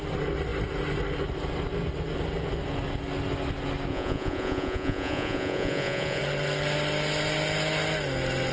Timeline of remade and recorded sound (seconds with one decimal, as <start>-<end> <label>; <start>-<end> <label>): 0.0-3.9 recorded; 3.9-6.2 remade; 6.2-8.5 recorded